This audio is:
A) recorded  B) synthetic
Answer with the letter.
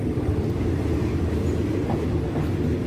A